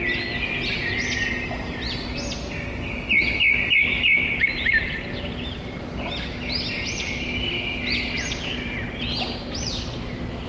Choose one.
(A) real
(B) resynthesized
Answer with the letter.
A